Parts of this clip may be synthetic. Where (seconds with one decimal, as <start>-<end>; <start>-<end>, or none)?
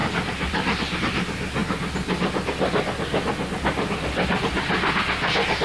0.0-1.0